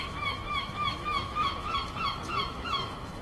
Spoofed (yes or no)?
yes